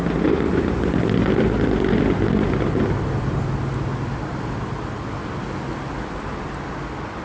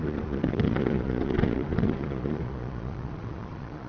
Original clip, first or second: first